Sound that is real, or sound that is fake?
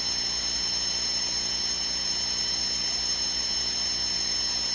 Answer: real